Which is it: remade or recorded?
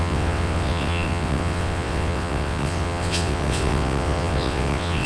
remade